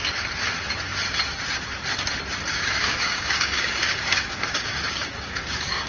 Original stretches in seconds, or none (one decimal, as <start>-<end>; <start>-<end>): 0.0-2.5